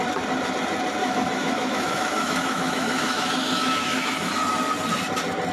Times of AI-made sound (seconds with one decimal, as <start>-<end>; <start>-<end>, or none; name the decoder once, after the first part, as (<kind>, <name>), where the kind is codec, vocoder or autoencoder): 1.0-4.3 (autoencoder, DAC-VAE)